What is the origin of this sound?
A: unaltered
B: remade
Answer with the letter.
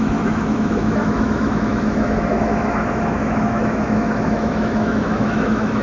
B